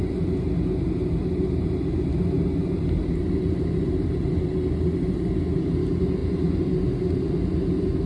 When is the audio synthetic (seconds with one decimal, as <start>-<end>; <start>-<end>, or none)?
none